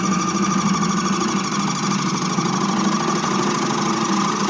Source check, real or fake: real